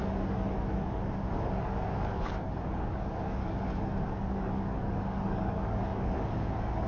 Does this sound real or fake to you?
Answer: fake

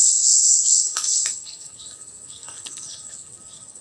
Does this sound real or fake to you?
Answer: fake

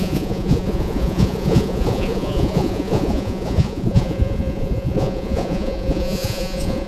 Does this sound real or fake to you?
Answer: fake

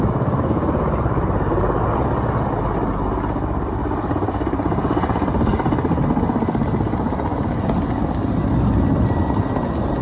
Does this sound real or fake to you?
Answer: real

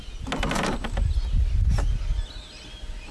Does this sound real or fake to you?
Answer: real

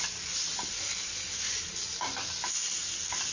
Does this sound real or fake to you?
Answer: real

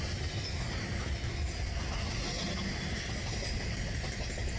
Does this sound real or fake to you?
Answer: real